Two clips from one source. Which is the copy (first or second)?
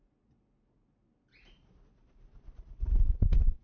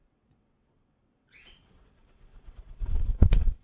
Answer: second